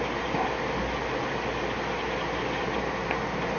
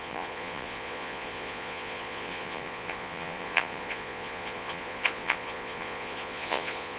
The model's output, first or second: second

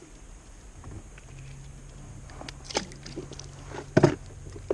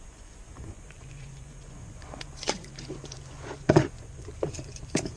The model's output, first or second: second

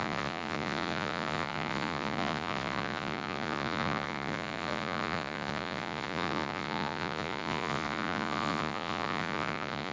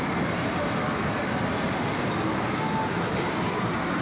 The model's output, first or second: first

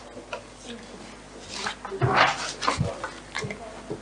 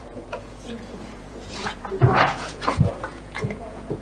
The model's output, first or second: second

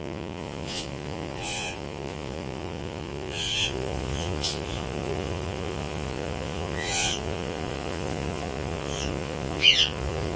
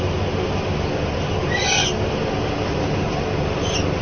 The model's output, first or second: first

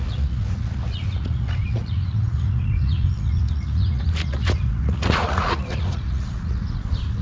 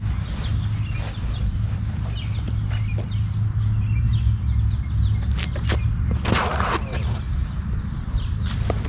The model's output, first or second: first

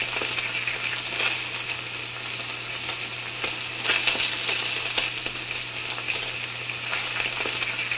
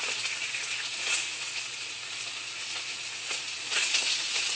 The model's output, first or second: second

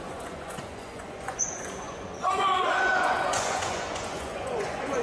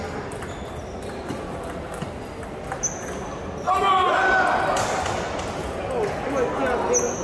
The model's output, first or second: first